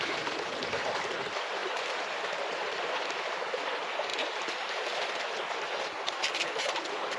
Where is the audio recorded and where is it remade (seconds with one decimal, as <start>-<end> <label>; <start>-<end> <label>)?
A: 0.0-7.2 recorded